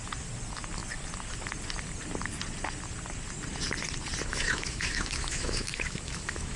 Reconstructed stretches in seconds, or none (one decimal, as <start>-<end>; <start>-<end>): 4.3-6.6

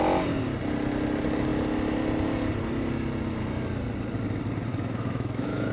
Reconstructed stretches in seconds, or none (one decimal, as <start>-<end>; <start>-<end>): 4.7-5.7